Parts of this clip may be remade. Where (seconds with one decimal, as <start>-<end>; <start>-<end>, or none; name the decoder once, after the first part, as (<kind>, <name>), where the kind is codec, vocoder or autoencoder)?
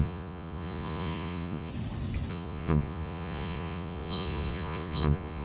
0.0-1.7 (vocoder, Vocos); 2.3-5.4